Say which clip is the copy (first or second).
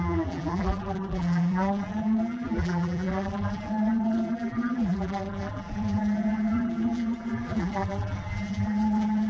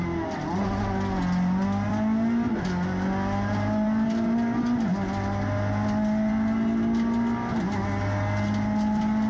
first